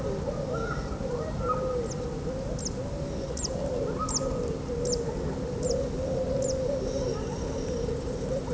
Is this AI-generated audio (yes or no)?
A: no